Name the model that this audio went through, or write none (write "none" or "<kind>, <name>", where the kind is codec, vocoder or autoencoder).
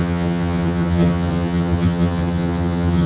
vocoder, HiFi-GAN